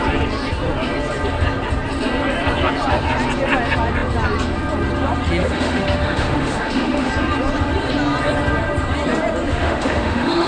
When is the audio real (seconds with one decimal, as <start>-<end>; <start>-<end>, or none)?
0.0-5.4; 7.1-9.5